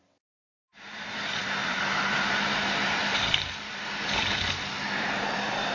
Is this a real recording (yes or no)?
no